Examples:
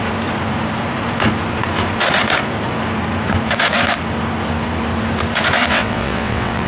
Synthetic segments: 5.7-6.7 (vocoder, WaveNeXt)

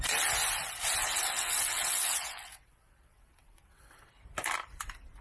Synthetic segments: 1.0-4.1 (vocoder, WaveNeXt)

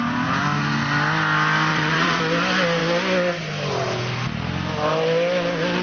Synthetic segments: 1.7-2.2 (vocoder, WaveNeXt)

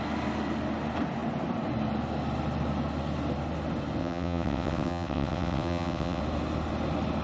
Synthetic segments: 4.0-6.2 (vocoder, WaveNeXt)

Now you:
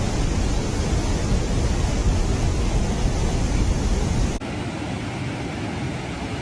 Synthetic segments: none

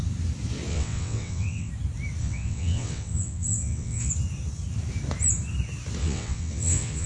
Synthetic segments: 0.7-1.7 (vocoder, WaveNeXt); 2.2-4.1; 6.0-7.1